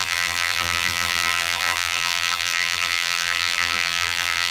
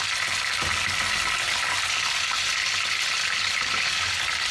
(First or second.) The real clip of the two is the second